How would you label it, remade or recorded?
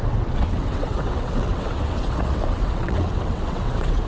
remade